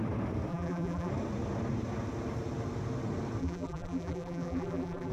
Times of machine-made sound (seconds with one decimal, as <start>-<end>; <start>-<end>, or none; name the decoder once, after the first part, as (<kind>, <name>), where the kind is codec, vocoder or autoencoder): 0.5-1.1 (vocoder, BigVGAN v2); 3.4-5.1